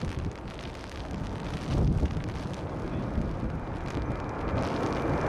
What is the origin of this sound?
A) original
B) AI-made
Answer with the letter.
A